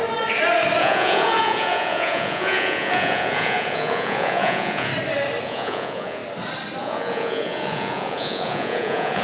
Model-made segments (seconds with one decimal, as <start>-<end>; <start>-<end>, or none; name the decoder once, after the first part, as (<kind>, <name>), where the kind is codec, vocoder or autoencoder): 0.8-4.9 (vocoder, Vocos); 5.4-6.2; 6.8-9.2